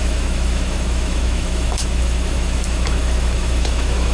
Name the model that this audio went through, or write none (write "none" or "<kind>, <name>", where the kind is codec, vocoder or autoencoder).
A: autoencoder, DAC-VAE